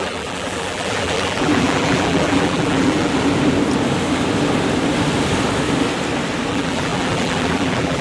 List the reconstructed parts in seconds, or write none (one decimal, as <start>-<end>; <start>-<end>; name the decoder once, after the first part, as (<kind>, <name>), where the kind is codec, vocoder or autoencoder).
0.0-3.1 (vocoder, BigVGAN v2); 6.5-8.0